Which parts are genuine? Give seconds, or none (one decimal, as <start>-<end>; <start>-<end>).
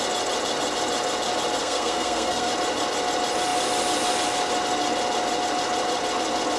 0.0-1.6; 2.5-6.6